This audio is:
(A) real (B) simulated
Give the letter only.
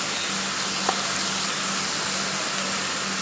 A